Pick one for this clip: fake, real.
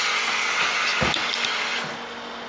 real